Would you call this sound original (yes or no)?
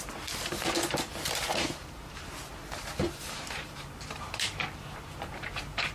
no